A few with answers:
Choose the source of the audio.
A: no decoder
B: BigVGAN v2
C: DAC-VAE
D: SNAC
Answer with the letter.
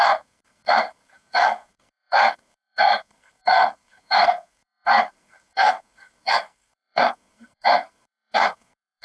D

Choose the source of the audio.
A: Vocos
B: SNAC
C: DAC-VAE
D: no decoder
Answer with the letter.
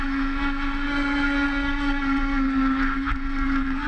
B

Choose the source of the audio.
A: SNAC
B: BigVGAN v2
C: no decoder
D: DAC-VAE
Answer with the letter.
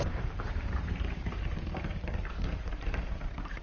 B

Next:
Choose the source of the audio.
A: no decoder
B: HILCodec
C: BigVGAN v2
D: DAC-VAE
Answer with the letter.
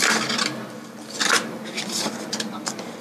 A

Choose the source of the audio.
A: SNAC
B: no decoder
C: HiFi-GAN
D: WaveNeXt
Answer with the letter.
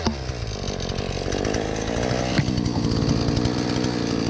B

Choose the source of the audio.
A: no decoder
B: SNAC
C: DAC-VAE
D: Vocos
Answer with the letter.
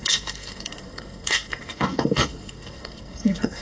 B